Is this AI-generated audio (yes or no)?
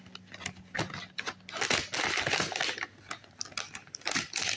no